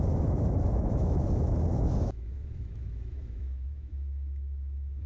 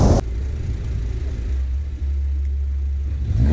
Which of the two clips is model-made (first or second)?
first